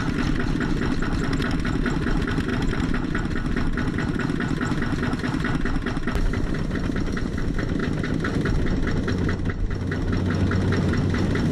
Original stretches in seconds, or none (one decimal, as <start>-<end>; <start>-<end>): 0.0-11.5